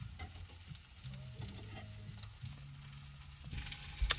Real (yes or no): yes